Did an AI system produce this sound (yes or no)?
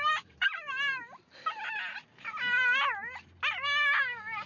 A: no